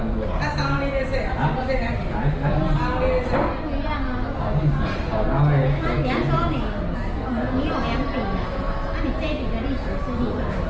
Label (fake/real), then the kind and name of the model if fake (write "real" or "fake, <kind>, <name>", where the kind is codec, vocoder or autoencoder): real